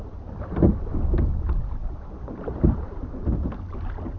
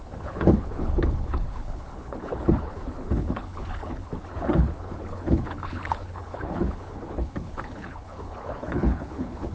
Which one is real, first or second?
first